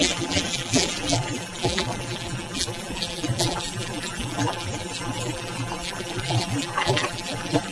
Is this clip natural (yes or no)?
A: no